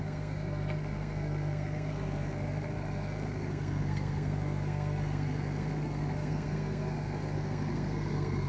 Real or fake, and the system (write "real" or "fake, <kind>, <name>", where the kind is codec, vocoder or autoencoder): fake, codec, SNAC